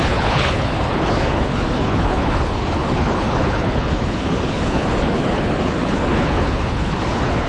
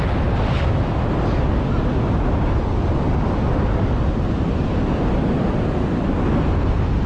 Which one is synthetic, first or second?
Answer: first